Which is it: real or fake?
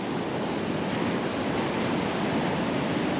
real